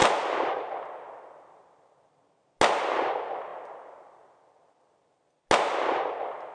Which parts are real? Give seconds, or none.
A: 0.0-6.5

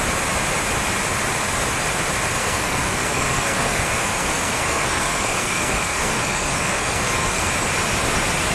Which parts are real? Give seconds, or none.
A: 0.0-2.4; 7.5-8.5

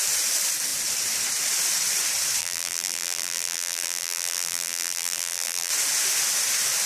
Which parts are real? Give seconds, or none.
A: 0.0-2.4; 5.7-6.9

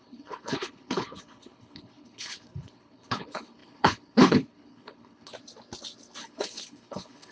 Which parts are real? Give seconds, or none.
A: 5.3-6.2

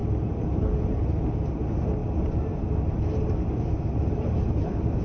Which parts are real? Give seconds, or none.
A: 0.0-1.4

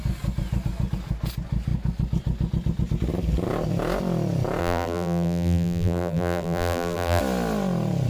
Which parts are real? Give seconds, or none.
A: 0.0-4.6; 7.2-8.1